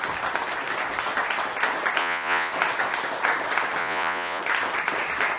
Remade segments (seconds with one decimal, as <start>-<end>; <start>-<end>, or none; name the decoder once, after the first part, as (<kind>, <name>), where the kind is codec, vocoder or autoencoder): 2.0-2.5 (vocoder, Vocos); 3.8-4.4